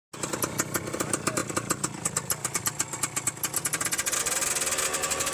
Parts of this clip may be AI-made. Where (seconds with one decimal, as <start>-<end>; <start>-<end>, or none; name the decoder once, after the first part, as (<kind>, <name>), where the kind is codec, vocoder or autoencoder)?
none